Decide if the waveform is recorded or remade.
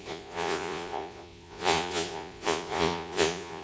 remade